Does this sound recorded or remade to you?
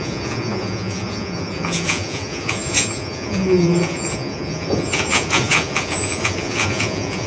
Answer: remade